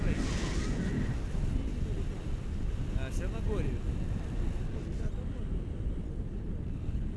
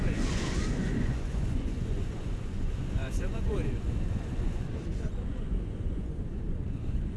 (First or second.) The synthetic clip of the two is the second